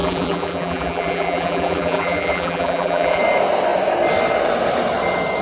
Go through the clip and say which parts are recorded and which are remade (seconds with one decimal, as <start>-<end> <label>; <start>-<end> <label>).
0.0-3.2 remade; 3.2-5.4 recorded